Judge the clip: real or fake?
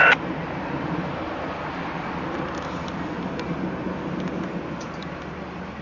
real